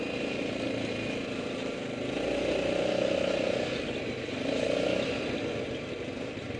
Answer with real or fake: real